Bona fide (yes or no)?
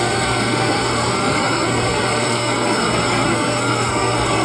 no